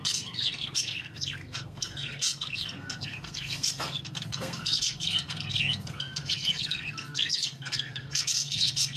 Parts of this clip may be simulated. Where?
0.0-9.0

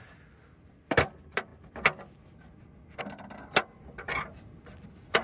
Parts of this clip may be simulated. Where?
none